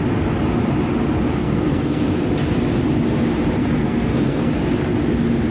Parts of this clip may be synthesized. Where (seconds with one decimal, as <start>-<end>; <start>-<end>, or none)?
1.4-2.3; 3.6-4.5